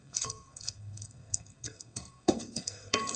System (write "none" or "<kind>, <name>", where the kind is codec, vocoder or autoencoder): codec, SNAC